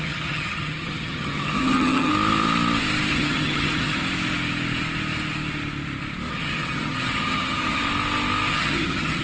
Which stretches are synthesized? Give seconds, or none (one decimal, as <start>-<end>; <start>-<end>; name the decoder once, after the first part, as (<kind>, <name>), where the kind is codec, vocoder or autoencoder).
0.0-2.1 (vocoder, HiFi-GAN); 3.1-4.0; 6.3-7.8; 8.5-9.2